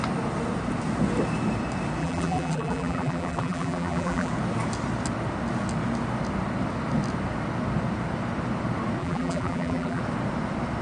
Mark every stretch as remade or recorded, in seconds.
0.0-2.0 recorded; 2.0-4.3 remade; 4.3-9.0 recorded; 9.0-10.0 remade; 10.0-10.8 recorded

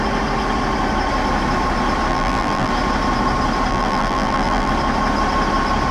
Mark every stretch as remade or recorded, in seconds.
0.0-2.1 recorded; 2.1-2.7 remade; 2.7-3.7 recorded; 3.7-4.7 remade; 4.7-5.9 recorded

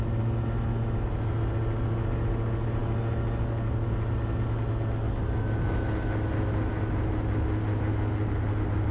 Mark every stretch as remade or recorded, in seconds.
0.0-8.9 recorded

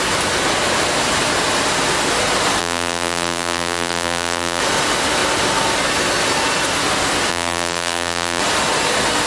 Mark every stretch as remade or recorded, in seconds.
0.0-2.6 recorded; 2.6-4.6 remade; 4.6-7.3 recorded; 7.3-8.4 remade; 8.4-9.3 recorded

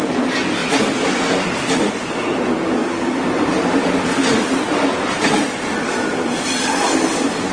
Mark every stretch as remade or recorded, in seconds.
0.0-0.6 recorded; 0.6-2.1 remade; 2.1-2.8 recorded; 2.8-6.2 remade; 6.2-7.5 recorded

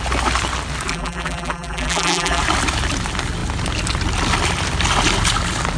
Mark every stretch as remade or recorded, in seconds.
0.0-0.9 recorded; 0.9-2.4 remade; 2.4-5.8 recorded